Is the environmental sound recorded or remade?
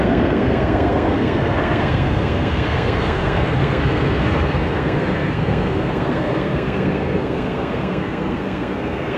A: remade